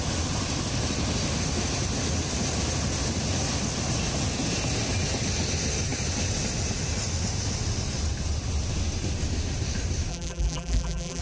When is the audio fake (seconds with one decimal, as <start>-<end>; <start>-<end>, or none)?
10.1-11.2